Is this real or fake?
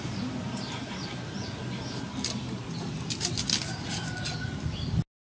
real